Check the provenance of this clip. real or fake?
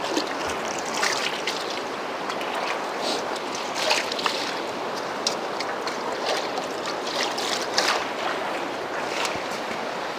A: real